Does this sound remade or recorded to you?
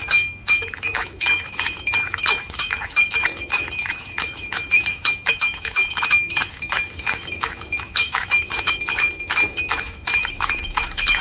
remade